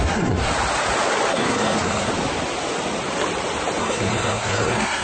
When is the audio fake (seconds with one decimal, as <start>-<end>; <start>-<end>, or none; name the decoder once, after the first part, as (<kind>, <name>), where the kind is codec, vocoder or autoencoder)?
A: 0.0-0.5 (codec, SNAC); 1.3-2.1; 3.8-5.0